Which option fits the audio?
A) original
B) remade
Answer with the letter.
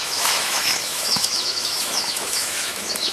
B